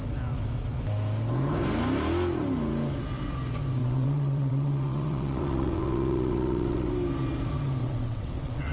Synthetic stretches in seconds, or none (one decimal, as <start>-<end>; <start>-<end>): 3.8-6.9; 7.8-8.7